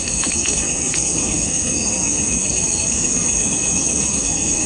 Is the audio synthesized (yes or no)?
yes